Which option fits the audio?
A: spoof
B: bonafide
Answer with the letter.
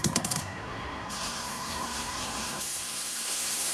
A